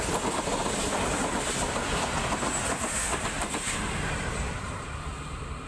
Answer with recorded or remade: recorded